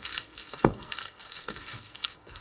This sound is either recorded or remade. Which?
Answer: remade